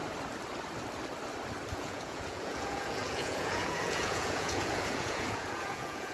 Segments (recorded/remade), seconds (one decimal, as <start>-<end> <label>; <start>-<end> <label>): 0.0-1.7 recorded; 1.7-6.1 remade